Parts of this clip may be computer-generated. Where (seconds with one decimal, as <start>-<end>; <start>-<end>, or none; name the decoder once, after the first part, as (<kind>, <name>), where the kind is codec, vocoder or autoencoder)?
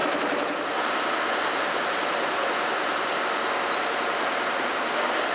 none